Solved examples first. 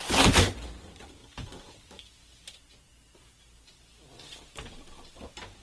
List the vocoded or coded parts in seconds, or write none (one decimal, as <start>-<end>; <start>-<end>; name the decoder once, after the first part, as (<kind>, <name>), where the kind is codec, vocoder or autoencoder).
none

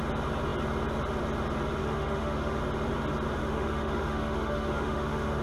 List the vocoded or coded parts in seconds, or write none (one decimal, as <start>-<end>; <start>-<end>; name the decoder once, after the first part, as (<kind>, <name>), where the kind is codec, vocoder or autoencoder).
1.8-2.6 (autoencoder, DAC-VAE); 3.4-5.4

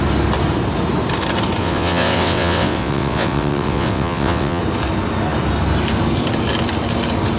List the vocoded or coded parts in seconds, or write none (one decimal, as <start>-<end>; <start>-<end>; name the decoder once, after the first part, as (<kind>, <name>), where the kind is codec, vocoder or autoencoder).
1.6-4.6 (vocoder, WaveNeXt)

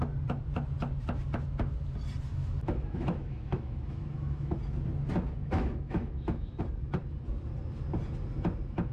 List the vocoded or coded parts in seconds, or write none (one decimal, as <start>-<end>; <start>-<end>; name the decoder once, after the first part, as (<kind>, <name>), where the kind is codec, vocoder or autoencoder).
2.3-4.6 (autoencoder, DAC-VAE); 5.4-6.6